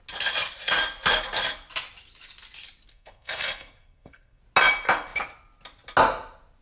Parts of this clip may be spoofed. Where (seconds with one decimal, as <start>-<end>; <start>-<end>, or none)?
2.9-4.4